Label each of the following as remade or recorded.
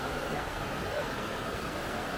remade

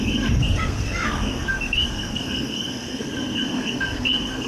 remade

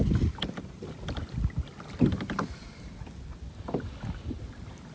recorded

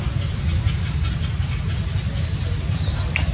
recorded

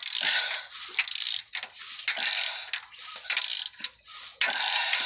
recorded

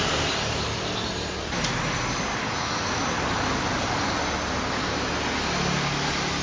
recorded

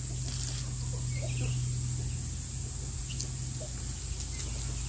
recorded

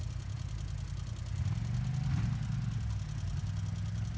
recorded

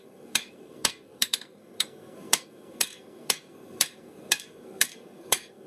remade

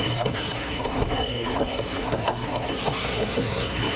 remade